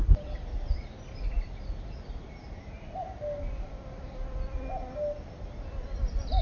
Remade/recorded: recorded